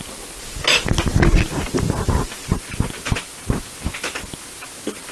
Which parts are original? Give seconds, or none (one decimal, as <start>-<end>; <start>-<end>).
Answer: 0.0-5.1